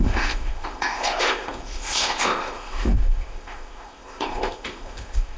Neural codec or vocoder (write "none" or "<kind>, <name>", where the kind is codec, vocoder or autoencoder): codec, ZipCodec